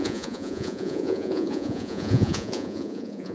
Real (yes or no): no